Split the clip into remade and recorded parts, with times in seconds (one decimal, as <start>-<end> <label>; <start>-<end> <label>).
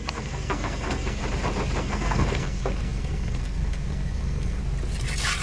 0.0-1.2 remade; 1.2-1.8 recorded; 1.8-4.6 remade; 4.6-5.4 recorded